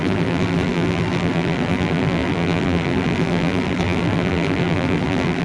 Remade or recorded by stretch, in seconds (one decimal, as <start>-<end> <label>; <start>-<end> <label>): 0.0-5.4 remade